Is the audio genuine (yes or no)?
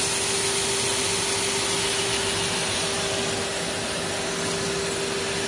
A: yes